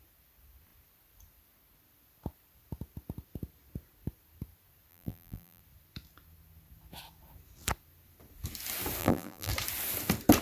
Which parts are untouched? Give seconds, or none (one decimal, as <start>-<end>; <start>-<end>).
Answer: 0.0-4.9; 5.6-9.0; 9.5-10.4